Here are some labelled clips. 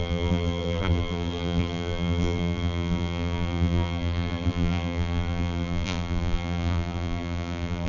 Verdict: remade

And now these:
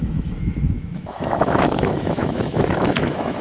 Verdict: remade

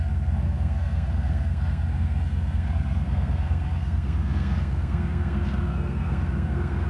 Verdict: remade